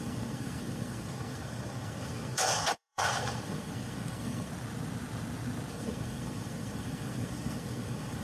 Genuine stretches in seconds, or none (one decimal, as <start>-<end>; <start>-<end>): 4.5-5.7

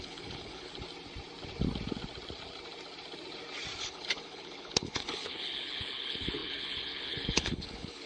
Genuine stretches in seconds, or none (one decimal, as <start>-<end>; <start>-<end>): 0.7-3.8

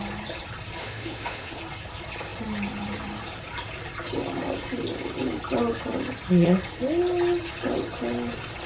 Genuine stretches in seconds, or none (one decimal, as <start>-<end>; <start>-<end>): 0.0-0.8; 1.6-8.7

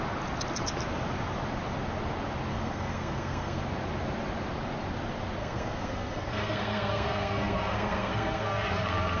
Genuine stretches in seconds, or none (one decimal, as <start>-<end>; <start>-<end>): 0.0-2.5; 3.6-5.4

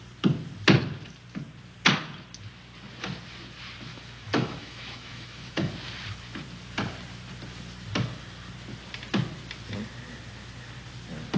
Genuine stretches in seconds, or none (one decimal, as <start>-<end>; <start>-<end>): 0.0-3.9; 5.7-11.4

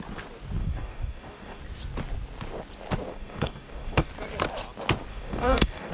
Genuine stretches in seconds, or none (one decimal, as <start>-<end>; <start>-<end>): 0.0-0.6; 1.6-3.1; 4.1-5.1

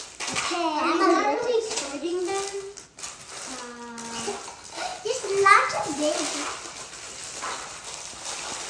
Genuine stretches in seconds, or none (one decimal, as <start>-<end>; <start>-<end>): 0.0-1.1; 2.2-8.7